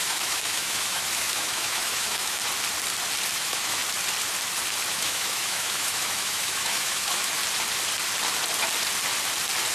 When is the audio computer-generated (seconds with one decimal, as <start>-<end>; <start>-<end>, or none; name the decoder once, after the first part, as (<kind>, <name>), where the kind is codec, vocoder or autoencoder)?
0.0-2.4 (autoencoder, DAC-VAE); 3.3-3.8; 4.9-7.4